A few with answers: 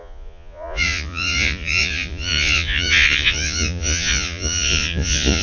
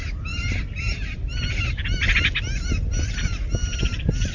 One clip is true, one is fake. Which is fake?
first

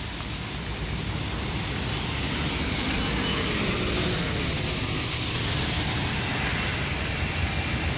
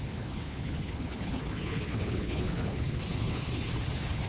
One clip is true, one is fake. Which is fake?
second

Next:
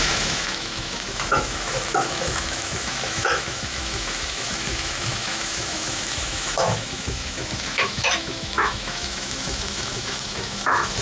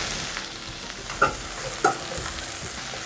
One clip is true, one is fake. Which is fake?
first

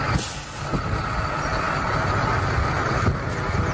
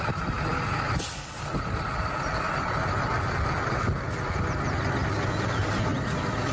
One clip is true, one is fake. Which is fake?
second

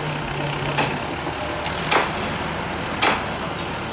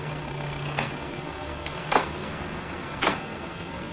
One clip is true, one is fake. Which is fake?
second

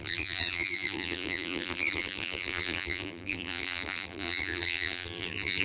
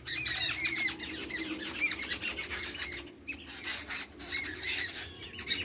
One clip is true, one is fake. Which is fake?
first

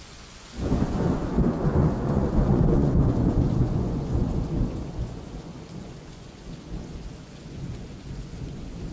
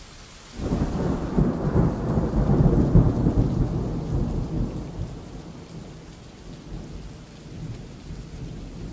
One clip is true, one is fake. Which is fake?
first